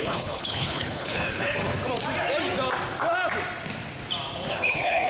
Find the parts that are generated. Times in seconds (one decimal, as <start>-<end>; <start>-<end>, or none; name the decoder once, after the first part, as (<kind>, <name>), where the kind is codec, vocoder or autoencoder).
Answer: 0.0-1.6 (codec, HILCodec); 4.5-5.1

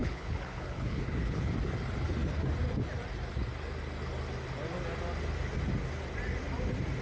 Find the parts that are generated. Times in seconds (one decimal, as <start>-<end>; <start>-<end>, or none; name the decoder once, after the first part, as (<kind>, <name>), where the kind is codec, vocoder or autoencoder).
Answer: 0.0-1.5 (codec, HILCodec)

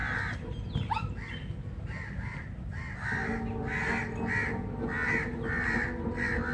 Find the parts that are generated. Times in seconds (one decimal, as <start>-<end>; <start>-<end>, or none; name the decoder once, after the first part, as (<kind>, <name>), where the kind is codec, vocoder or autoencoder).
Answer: none

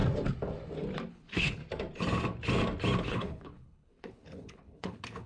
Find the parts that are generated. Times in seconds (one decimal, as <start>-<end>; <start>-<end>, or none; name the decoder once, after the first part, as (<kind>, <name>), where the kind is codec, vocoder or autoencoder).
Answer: 1.1-1.6 (codec, HILCodec); 3.0-5.3